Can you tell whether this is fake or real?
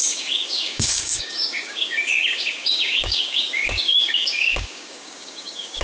fake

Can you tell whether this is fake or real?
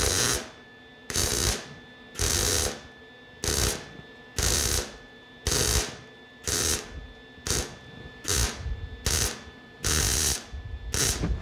real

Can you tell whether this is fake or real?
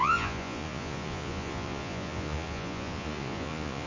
fake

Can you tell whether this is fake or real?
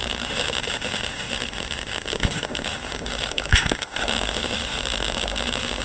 fake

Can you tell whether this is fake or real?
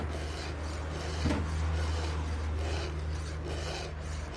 real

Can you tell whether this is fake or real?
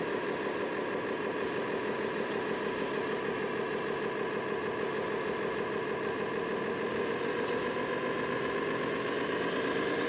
real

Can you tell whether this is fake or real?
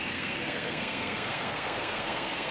fake